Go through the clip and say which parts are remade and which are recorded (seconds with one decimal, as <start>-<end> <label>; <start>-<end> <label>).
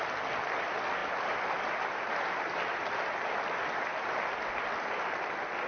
0.0-5.7 recorded